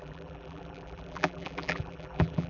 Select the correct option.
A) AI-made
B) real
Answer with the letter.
A